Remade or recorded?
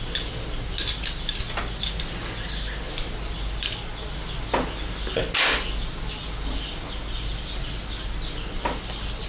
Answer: recorded